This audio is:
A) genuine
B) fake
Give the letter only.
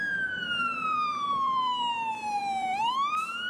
B